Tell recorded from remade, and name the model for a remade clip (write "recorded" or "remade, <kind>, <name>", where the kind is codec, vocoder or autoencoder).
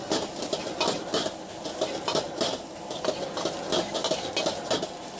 recorded